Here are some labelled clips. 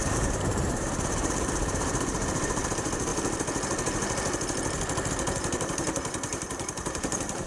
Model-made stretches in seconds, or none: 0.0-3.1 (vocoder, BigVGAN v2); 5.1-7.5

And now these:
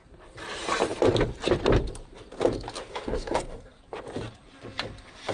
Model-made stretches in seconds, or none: 2.9-3.8 (codec, SNAC)

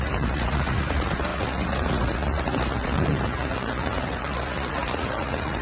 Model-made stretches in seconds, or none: 0.0-5.6 (vocoder, Vocos)

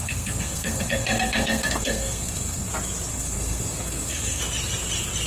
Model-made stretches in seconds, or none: 0.0-2.7 (codec, SNAC); 3.1-4.4